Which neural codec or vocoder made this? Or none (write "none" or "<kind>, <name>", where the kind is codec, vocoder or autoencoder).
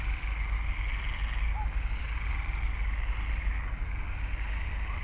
none